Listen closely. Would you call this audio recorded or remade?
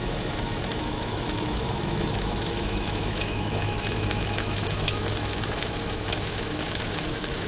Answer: remade